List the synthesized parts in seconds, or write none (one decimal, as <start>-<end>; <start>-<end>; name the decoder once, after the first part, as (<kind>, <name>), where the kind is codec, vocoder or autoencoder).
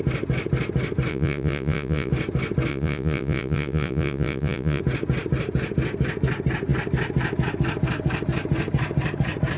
1.1-2.1 (vocoder, Vocos); 2.7-4.8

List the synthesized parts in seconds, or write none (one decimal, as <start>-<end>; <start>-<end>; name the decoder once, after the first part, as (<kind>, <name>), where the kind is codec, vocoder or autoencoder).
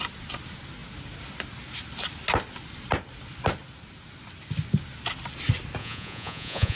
5.8-6.8 (vocoder, Vocos)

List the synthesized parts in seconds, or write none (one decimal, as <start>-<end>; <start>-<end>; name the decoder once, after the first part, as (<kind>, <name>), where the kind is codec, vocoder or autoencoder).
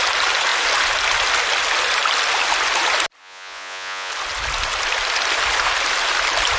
3.2-4.1 (vocoder, Vocos)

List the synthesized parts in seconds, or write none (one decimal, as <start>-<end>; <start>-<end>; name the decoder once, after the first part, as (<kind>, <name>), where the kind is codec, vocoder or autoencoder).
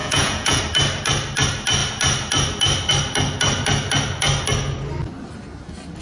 0.0-0.6 (vocoder, Vocos)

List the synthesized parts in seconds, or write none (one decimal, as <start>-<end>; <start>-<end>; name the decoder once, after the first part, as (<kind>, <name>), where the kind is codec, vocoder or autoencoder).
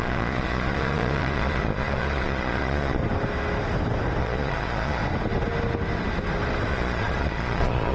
0.0-3.0 (vocoder, Vocos); 4.2-5.0; 6.7-7.9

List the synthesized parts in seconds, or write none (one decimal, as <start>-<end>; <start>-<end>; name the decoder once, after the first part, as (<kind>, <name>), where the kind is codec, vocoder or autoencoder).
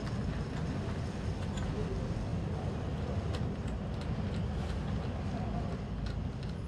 none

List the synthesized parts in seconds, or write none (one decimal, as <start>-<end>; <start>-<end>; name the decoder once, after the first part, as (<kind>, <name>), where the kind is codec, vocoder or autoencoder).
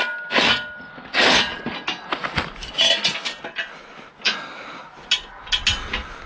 none